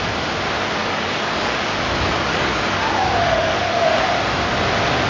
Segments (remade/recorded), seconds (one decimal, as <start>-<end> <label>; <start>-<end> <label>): 0.0-0.8 recorded; 0.8-3.9 remade; 3.9-5.1 recorded